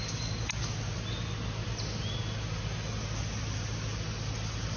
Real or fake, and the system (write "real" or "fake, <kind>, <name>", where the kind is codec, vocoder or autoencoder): real